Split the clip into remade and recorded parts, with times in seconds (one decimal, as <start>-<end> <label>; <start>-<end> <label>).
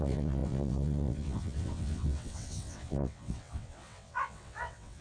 0.0-5.0 remade